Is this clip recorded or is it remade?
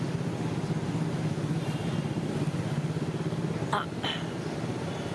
recorded